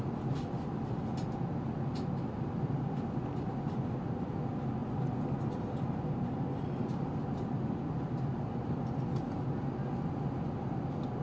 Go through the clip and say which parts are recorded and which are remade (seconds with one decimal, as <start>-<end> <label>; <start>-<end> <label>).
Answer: 0.0-4.8 recorded; 4.8-6.2 remade; 6.2-11.2 recorded